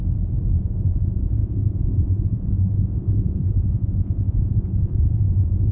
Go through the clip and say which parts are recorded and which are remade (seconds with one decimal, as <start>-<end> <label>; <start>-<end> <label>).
0.0-0.6 recorded; 0.6-5.7 remade